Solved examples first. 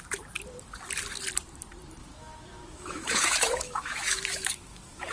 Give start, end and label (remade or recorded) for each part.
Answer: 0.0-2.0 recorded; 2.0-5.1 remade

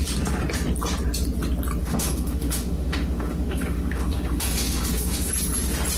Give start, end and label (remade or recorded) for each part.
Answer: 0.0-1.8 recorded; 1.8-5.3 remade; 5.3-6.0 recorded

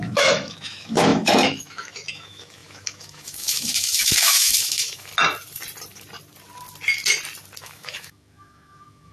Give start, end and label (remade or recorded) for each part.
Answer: 0.0-5.1 remade; 5.1-7.6 recorded; 7.6-9.1 remade